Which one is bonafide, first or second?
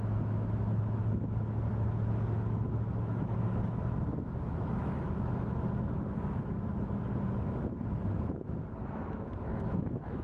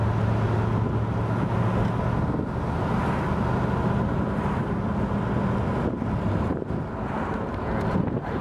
second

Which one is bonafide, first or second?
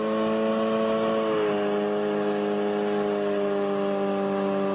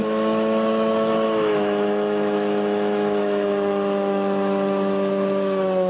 first